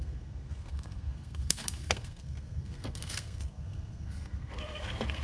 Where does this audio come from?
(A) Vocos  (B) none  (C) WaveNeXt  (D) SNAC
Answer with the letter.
D